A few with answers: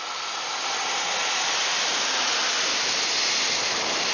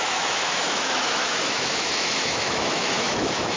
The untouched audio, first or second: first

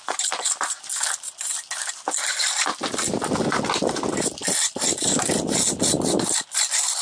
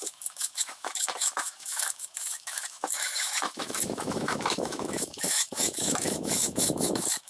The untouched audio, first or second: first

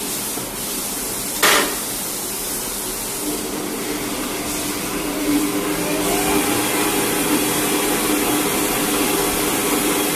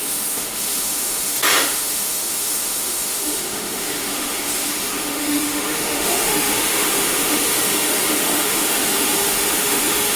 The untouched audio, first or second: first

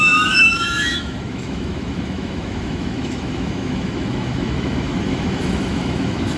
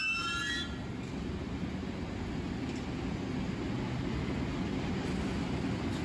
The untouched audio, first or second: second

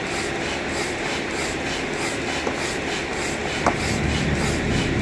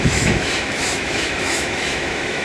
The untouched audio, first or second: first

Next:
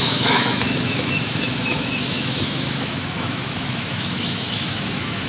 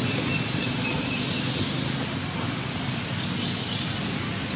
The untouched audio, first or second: second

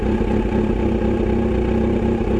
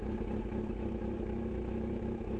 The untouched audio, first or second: first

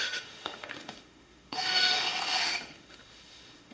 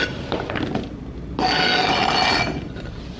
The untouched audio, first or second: second